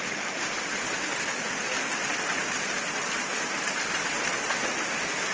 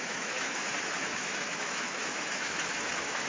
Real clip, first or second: first